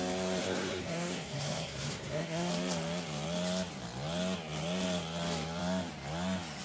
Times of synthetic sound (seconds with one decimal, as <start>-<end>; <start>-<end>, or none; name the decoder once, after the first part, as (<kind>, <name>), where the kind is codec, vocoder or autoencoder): 0.4-2.5 (codec, SNAC)